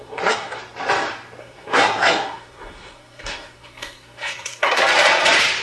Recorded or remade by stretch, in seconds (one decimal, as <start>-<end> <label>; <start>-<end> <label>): 0.0-0.6 remade; 0.6-1.4 recorded; 1.4-4.8 remade; 4.8-5.6 recorded